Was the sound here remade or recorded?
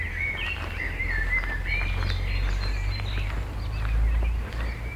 recorded